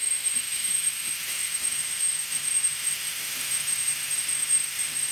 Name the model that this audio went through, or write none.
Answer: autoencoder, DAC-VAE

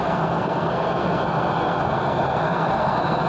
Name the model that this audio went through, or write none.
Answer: codec, SNAC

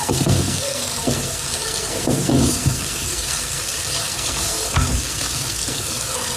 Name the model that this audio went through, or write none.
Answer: codec, SNAC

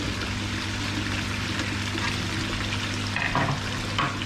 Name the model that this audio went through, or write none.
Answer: none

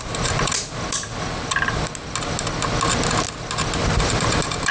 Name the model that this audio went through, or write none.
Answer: none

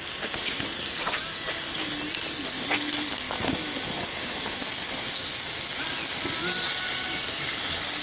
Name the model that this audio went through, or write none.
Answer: none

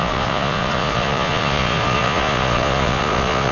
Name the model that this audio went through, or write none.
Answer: vocoder, Vocos